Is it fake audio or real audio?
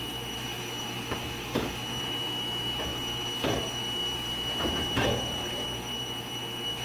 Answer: fake